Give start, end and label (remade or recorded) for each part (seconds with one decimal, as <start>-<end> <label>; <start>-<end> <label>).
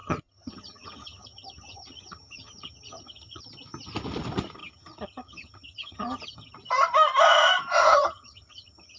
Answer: 0.0-3.4 remade; 3.4-4.6 recorded; 4.6-6.5 remade; 6.5-7.8 recorded; 7.8-9.0 remade